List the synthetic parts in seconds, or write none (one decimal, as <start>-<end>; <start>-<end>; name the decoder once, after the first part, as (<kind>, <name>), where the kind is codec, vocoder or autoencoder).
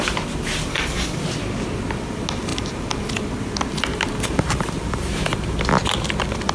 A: 0.7-1.2 (codec, DAC)